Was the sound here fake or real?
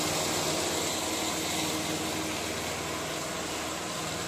real